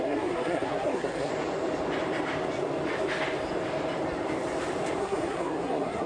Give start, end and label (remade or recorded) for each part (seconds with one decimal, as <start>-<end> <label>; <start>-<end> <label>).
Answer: 0.0-1.3 remade; 1.3-5.0 recorded; 5.0-6.1 remade